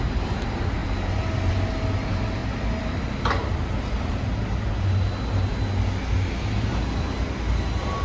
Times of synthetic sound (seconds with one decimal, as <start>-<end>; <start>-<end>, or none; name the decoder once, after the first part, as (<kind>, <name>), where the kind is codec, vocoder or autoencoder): 2.4-3.6 (vocoder, BigVGAN v2)